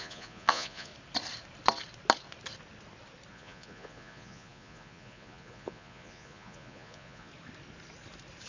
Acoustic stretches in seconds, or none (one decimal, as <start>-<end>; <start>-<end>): 0.9-3.3; 7.3-8.5